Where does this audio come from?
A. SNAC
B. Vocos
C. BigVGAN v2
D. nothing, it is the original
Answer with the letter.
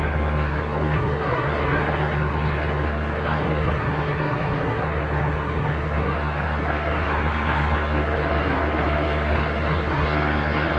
A